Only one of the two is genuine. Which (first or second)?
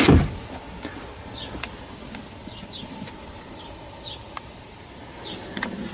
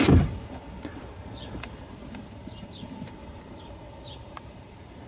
first